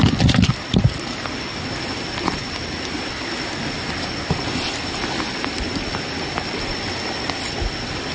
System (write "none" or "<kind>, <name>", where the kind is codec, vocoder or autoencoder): none